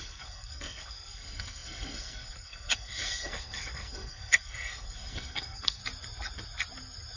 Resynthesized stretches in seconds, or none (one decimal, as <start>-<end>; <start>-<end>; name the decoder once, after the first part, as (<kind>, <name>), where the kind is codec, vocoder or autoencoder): 0.0-5.8 (codec, SNAC)